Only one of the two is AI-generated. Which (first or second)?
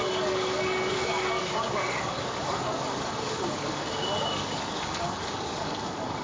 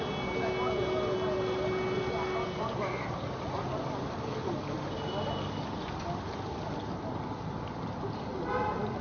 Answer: first